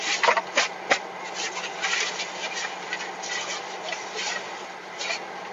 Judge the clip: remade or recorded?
recorded